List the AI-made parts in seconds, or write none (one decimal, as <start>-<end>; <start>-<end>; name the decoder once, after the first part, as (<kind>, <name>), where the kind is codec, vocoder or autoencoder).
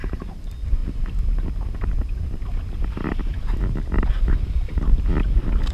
none